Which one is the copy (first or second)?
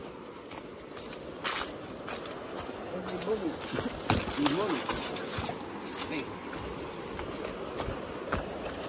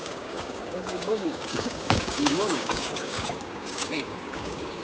second